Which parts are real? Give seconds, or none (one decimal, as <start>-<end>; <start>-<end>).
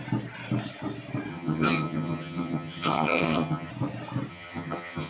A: 0.0-1.3; 3.7-4.3